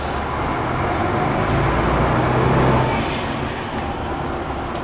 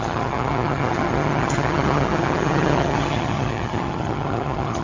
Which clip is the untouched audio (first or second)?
first